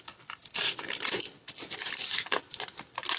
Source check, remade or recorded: recorded